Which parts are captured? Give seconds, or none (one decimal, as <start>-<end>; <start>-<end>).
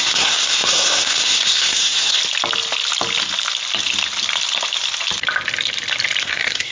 2.2-6.2